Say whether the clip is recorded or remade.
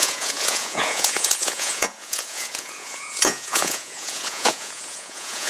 remade